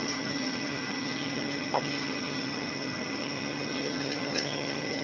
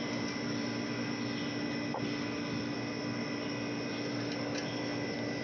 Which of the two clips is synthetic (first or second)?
first